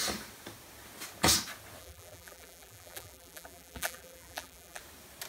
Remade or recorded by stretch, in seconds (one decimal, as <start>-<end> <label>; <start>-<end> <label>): 0.0-1.8 recorded; 1.8-4.8 remade; 4.8-5.3 recorded